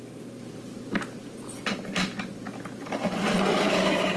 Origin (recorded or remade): recorded